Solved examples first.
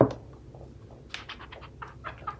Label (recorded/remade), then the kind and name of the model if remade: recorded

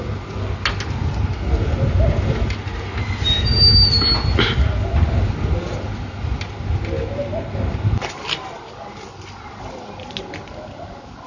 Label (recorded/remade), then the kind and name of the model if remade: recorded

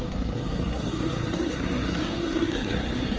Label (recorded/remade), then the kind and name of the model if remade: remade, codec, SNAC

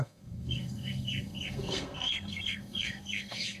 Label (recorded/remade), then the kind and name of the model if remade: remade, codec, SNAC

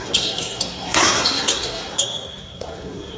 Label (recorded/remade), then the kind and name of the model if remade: remade, codec, SNAC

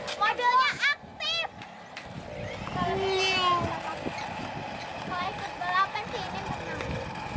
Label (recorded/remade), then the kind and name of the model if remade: recorded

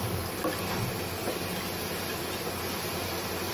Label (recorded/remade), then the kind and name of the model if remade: recorded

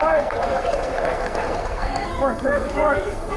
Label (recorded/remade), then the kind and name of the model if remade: remade, codec, SNAC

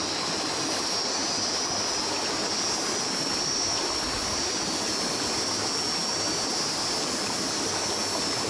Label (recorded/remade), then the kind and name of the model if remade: recorded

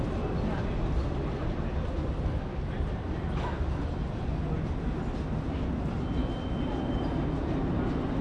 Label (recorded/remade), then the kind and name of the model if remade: recorded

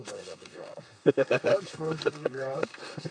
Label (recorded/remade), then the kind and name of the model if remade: remade, codec, SNAC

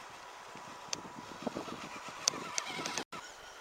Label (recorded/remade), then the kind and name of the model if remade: recorded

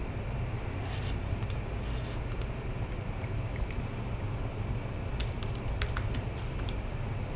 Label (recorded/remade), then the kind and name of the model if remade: recorded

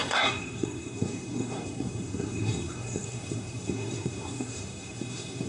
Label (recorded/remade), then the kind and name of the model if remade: remade, codec, SNAC